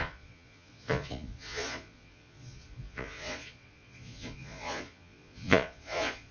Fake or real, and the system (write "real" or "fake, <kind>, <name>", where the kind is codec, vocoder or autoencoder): fake, vocoder, Vocos